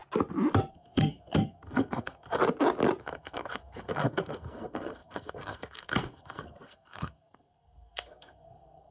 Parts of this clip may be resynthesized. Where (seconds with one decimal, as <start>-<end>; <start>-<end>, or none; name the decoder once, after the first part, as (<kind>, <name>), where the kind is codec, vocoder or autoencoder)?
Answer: 0.7-2.4 (codec, SNAC); 3.0-8.9